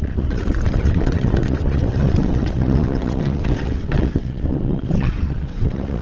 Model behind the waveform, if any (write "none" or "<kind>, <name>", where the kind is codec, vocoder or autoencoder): vocoder, WaveNeXt